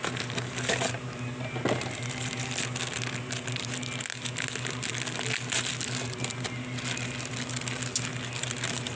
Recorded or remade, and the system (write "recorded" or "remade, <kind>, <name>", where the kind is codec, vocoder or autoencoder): recorded